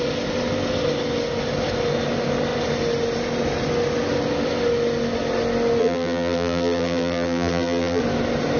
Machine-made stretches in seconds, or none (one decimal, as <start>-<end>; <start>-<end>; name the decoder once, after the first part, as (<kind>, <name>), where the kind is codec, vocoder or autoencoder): 5.8-8.0 (vocoder, BigVGAN v2)